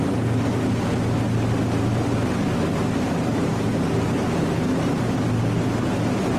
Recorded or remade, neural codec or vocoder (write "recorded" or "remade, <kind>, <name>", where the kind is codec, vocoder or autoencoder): recorded